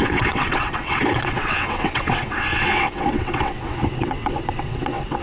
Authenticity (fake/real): fake